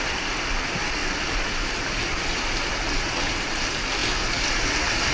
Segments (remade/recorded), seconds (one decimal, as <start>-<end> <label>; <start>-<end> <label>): 0.0-5.1 recorded